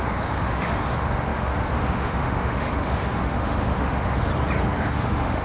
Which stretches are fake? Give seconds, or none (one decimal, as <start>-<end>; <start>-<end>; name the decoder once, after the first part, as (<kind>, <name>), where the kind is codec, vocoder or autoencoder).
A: 0.0-4.3 (autoencoder, DAC-VAE); 4.8-5.4